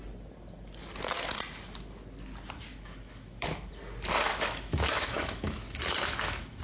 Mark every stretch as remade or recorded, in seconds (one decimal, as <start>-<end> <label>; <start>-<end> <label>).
0.0-2.7 recorded; 2.7-3.7 remade; 3.7-4.3 recorded; 4.3-6.6 remade